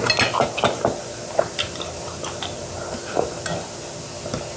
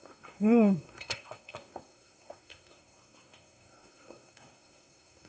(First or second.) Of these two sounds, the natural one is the first